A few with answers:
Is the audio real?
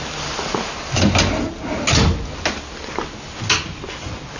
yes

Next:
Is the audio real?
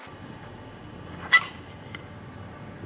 yes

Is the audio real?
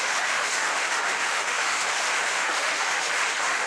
no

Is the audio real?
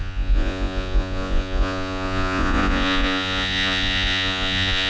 no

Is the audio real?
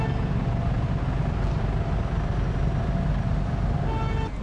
yes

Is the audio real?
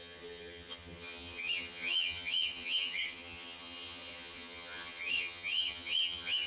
no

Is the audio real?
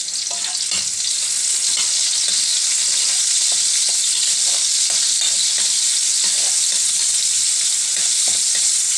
yes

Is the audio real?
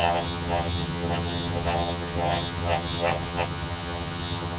no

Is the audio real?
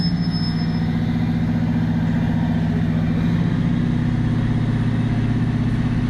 yes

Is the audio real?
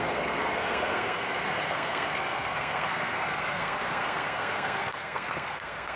no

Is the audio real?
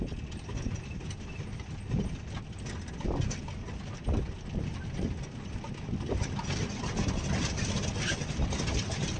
yes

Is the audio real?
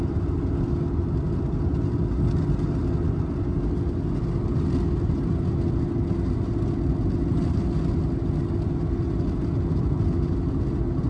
yes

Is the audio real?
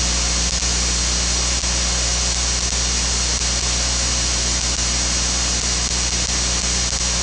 yes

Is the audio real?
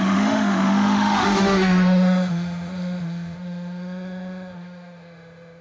no